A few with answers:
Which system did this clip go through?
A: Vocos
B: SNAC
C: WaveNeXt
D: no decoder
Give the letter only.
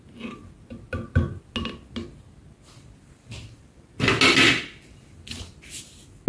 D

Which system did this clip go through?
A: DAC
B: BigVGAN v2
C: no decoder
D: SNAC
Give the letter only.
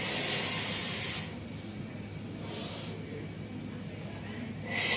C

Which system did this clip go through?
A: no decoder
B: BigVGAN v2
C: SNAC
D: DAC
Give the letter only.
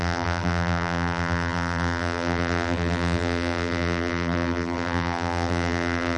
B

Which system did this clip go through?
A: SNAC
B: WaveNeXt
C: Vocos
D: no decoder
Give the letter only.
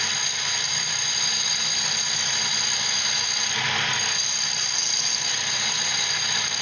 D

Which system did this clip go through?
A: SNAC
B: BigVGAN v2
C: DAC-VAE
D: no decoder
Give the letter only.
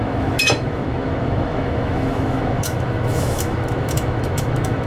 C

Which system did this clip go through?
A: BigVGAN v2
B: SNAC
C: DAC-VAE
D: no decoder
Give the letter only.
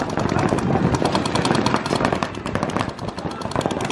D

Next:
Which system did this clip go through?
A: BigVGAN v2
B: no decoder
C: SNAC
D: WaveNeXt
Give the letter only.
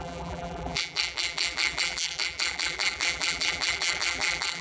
A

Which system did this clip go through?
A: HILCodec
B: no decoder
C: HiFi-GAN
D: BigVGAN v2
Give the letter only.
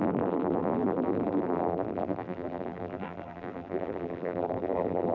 D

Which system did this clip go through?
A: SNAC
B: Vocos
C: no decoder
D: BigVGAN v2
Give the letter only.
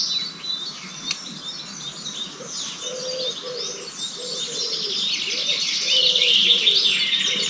C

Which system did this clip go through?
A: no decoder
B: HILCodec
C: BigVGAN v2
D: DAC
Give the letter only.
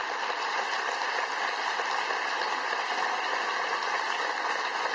A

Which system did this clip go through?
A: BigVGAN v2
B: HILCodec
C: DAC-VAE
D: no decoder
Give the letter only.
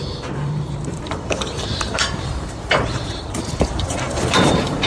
A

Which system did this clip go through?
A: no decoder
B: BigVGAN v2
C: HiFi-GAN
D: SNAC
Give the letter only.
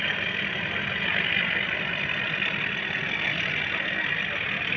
A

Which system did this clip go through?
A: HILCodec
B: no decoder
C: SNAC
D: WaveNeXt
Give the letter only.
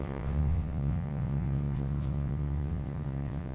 D